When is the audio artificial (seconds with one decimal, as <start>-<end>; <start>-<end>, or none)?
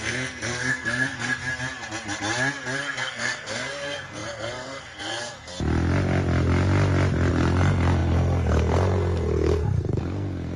0.0-1.4; 2.8-5.5; 7.3-10.6